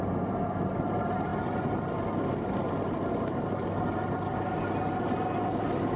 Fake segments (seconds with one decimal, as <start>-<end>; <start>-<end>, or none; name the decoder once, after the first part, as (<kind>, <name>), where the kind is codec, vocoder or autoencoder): none